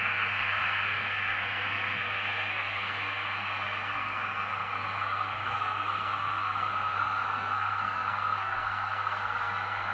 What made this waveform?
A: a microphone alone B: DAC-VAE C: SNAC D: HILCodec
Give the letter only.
C